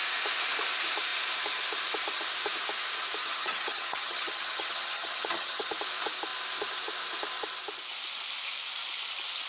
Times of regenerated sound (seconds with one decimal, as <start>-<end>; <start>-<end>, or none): 3.2-5.7